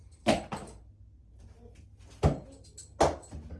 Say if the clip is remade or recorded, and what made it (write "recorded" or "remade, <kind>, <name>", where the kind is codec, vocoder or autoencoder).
recorded